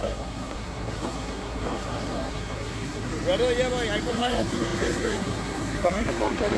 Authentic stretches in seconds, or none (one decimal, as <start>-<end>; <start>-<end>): 3.1-4.1